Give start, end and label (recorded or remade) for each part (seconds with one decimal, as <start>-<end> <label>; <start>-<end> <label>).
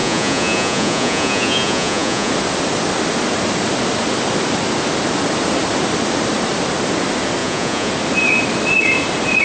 0.0-2.3 remade; 2.3-7.4 recorded; 7.4-7.9 remade; 7.9-9.4 recorded